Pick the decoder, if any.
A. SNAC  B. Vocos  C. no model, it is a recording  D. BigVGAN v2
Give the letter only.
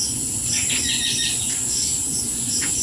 B